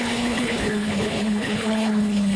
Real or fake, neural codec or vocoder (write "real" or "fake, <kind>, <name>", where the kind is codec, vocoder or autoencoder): fake, codec, HILCodec